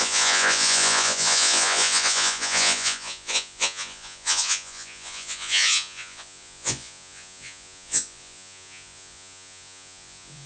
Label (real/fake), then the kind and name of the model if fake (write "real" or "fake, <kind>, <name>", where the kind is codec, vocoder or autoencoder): fake, vocoder, Vocos